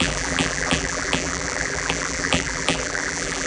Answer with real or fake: fake